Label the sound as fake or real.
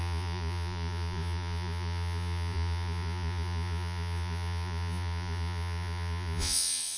fake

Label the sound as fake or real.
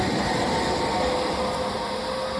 real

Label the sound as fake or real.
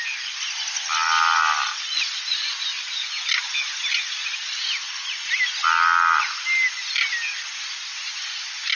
real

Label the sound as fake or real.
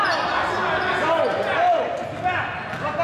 real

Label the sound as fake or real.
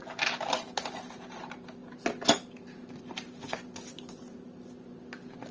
real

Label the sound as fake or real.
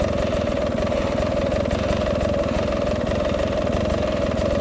real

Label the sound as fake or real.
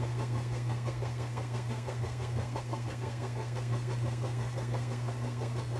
fake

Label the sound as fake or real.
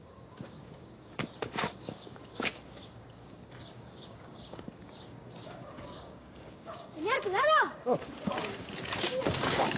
fake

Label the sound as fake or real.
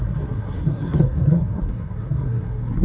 fake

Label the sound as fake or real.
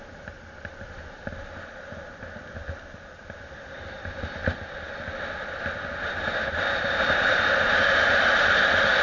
real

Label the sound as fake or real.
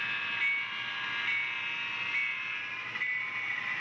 real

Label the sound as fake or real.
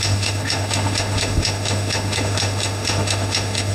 fake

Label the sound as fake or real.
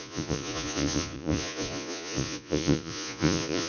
fake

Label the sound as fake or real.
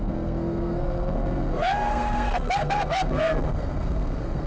fake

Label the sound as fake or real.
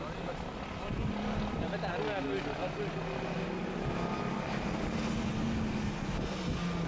real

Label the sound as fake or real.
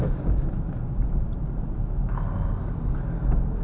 real